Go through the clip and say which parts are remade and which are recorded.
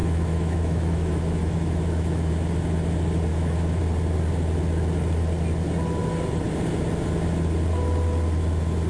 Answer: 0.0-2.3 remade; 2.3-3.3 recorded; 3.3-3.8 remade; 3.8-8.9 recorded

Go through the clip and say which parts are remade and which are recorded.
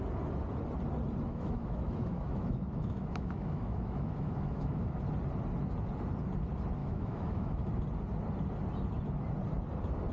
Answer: 0.0-1.3 recorded; 1.3-5.0 remade; 5.0-6.8 recorded; 6.8-7.7 remade; 7.7-10.1 recorded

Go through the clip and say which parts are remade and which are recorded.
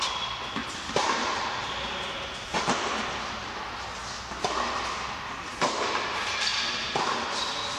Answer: 0.0-7.8 recorded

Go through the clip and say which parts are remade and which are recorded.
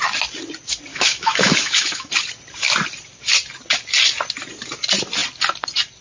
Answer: 0.0-0.9 recorded; 0.9-2.1 remade; 2.1-6.0 recorded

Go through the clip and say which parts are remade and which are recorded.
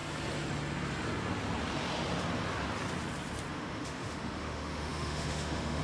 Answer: 0.0-3.5 recorded; 3.5-5.8 remade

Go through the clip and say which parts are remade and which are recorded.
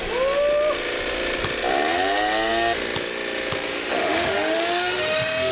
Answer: 0.0-3.7 recorded; 3.7-5.5 remade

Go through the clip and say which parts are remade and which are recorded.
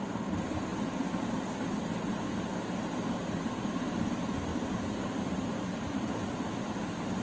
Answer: 0.0-7.2 recorded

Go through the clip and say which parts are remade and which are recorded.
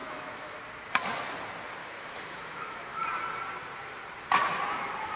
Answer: 0.0-0.6 remade; 0.6-1.8 recorded; 1.8-3.0 remade; 3.0-5.2 recorded